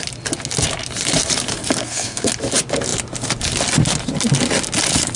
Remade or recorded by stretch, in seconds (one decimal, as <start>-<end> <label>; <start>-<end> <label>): 0.0-1.8 recorded; 1.8-2.3 remade; 2.3-5.2 recorded